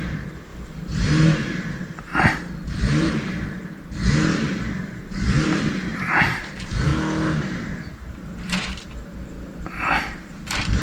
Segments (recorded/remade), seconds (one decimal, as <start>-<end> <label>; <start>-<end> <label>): 0.0-0.5 remade; 0.5-1.0 recorded; 1.0-6.9 remade; 6.9-7.8 recorded; 7.8-10.8 remade